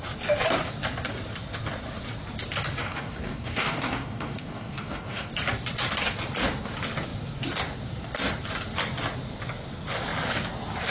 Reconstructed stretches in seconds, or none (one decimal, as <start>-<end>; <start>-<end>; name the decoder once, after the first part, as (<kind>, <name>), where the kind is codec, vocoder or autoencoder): 2.8-5.3 (codec, DAC)